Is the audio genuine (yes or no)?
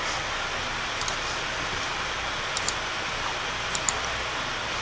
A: yes